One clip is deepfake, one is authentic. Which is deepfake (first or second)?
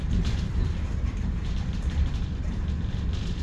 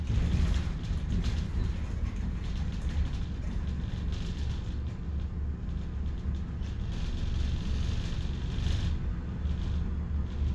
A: first